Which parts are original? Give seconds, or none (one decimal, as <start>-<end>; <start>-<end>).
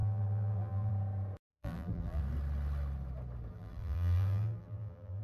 0.9-1.5; 2.2-3.5